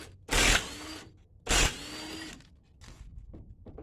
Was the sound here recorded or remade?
recorded